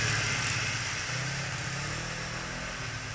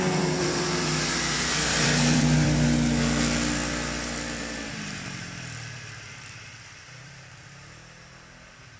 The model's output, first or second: second